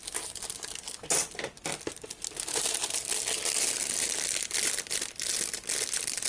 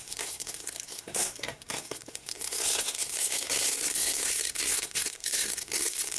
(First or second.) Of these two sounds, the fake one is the second